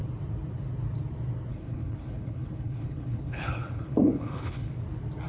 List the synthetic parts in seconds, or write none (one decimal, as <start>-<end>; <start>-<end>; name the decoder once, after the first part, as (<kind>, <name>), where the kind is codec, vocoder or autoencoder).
1.5-4.7 (codec, HILCodec)